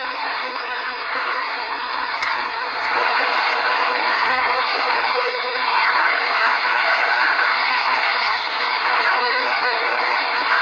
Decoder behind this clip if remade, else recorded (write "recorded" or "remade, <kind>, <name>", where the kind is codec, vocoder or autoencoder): remade, codec, SNAC